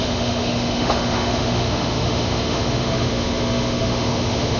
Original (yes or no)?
no